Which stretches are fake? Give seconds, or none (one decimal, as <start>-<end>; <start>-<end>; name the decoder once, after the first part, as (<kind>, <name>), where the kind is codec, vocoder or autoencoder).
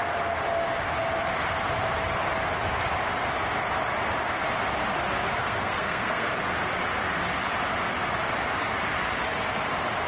5.4-6.3 (codec, SNAC)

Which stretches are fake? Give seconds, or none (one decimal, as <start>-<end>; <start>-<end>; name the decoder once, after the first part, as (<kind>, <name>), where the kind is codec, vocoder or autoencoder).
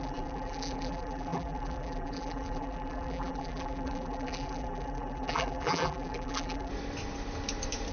0.0-6.7 (vocoder, BigVGAN v2)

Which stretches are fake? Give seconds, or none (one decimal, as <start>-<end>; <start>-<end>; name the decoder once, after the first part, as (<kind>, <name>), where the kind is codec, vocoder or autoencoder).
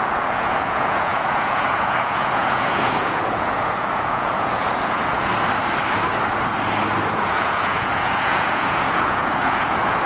0.0-5.3 (vocoder, Vocos); 7.1-10.1